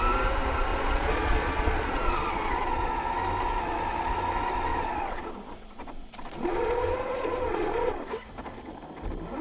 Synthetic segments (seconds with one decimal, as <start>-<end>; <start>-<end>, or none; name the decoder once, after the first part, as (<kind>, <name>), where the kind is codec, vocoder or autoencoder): 0.7-2.9 (vocoder, Vocos); 4.7-8.1